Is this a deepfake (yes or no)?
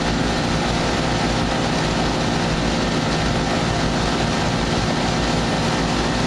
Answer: no